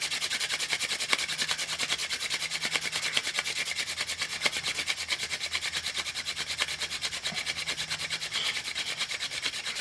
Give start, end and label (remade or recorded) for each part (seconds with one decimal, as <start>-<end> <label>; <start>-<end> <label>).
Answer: 0.0-9.8 recorded